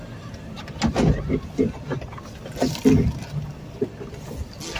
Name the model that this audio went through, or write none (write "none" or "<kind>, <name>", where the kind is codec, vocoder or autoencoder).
none